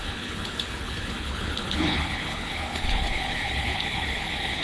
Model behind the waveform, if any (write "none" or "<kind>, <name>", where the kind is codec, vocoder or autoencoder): codec, HILCodec